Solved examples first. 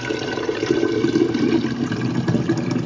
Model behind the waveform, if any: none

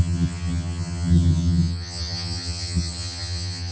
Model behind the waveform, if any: vocoder, HiFi-GAN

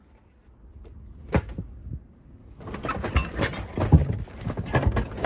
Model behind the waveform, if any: none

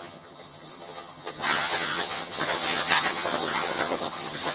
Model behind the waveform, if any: vocoder, HiFi-GAN